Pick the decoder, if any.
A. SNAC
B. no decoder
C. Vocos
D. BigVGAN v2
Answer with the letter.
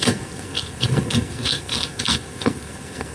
A